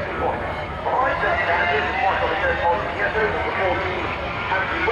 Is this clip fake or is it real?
fake